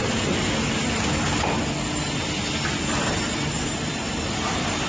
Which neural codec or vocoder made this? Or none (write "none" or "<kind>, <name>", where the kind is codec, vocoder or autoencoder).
none